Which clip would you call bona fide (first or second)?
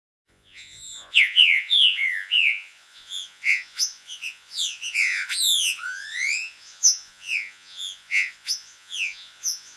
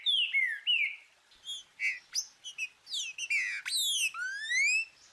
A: second